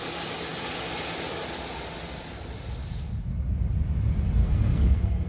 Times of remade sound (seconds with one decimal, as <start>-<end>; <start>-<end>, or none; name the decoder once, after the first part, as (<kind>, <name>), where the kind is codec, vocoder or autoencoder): 4.4-5.3 (codec, SNAC)